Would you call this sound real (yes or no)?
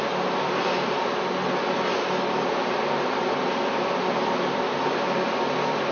yes